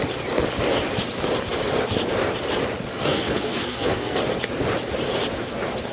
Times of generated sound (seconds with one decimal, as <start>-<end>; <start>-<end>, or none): 2.9-4.2